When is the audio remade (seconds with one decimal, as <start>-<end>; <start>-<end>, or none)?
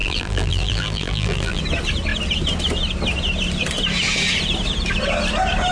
0.0-1.6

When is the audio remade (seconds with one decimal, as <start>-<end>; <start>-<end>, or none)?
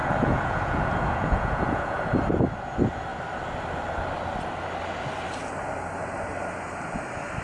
0.0-2.0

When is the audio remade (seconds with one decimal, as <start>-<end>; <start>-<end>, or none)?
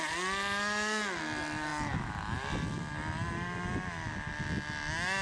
none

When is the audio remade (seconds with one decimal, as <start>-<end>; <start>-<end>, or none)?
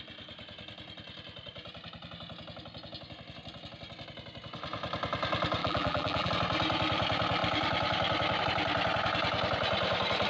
5.6-6.3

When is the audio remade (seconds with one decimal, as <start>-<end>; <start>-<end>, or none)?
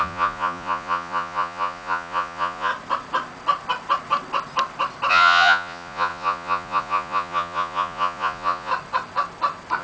0.0-2.7; 5.1-8.7